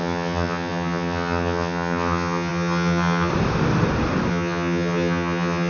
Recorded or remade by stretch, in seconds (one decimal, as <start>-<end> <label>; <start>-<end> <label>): 0.0-3.3 remade; 3.3-4.3 recorded; 4.3-5.7 remade